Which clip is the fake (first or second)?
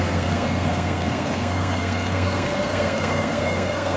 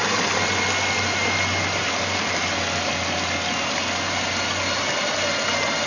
first